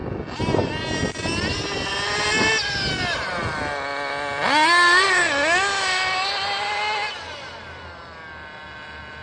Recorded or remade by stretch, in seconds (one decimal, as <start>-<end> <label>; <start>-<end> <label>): 0.0-9.2 recorded